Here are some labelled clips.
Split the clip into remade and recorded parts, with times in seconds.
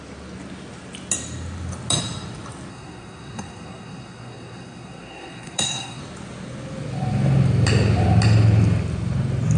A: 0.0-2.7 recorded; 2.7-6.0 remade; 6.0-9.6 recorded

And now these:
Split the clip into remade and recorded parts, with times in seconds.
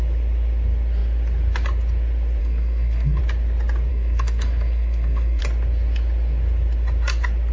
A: 0.0-2.4 recorded; 2.4-3.2 remade; 3.2-3.9 recorded; 3.9-5.4 remade; 5.4-7.5 recorded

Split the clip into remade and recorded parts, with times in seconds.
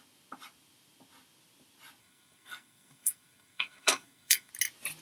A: 0.0-2.0 recorded; 2.0-4.5 remade; 4.5-5.0 recorded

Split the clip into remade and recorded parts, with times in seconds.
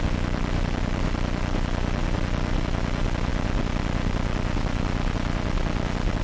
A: 0.0-6.2 recorded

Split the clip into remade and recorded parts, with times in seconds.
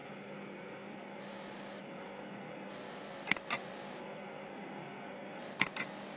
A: 0.0-1.2 remade; 1.2-1.8 recorded; 1.8-2.7 remade; 2.7-4.0 recorded; 4.0-5.4 remade; 5.4-6.2 recorded